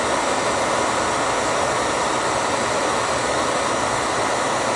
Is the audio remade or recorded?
recorded